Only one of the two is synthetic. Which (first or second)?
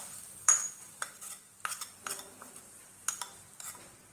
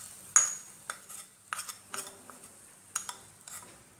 first